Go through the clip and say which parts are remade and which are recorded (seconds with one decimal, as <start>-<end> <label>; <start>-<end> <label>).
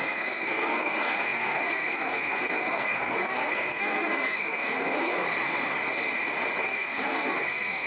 0.0-5.1 remade; 5.1-6.6 recorded; 6.6-7.9 remade